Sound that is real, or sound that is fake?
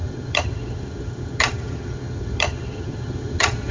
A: fake